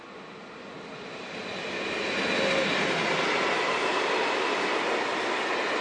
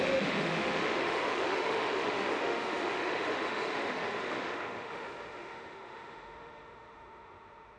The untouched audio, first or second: first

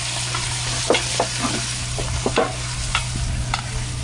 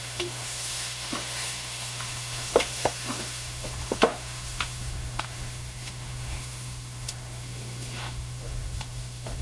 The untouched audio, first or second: first